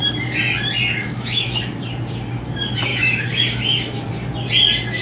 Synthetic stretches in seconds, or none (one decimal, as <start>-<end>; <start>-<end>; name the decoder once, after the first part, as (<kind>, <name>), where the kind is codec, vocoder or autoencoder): 1.0-1.7 (autoencoder, DAC-VAE); 2.9-4.1